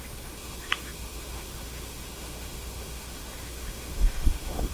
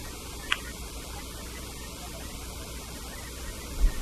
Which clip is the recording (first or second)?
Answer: second